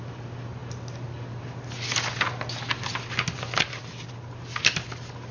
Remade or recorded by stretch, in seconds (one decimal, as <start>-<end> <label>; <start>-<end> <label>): 0.0-5.3 recorded